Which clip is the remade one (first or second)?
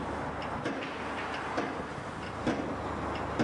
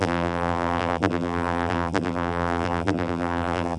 second